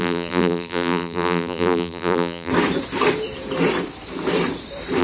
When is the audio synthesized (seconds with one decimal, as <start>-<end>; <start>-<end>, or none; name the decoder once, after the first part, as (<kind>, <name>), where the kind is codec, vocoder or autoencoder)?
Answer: 0.0-2.5 (vocoder, BigVGAN v2)